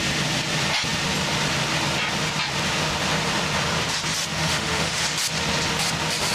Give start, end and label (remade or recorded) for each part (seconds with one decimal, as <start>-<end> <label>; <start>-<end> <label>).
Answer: 0.0-4.3 recorded; 4.3-5.0 remade; 5.0-6.3 recorded